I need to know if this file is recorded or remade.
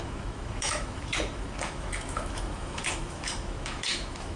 remade